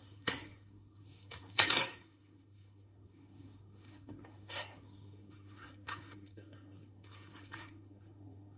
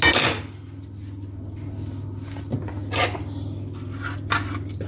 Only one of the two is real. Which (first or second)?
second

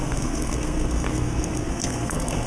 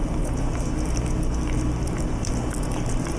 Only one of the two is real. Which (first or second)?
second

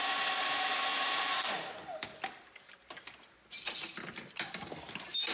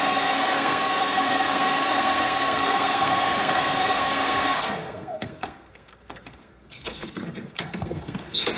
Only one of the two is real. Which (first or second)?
first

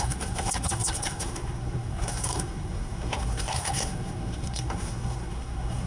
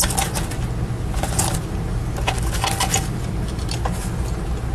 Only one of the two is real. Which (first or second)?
second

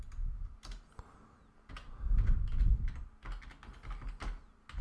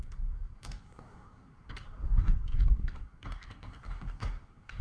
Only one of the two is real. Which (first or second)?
first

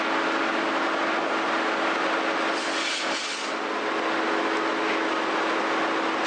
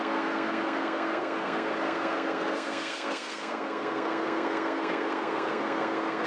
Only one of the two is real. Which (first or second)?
first